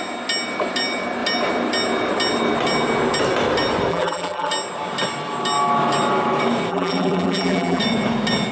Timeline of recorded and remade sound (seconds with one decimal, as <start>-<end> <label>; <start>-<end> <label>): 0.0-3.9 recorded; 3.9-4.5 remade; 4.5-6.7 recorded; 6.7-7.8 remade; 7.8-8.5 recorded